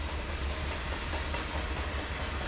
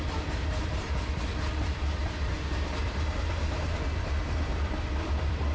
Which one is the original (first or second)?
first